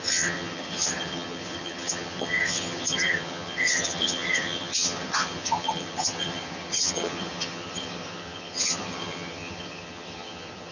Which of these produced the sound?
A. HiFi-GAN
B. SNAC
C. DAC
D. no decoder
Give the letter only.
A